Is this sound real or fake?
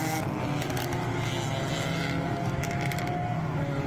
real